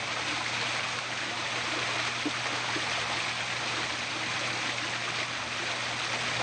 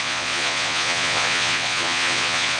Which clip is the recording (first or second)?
first